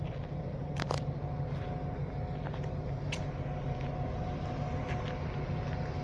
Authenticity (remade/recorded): recorded